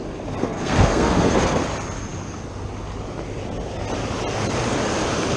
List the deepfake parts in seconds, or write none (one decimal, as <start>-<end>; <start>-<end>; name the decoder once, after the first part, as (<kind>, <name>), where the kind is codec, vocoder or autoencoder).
0.4-1.6 (codec, SNAC)